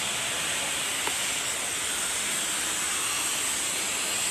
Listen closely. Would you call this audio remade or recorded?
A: recorded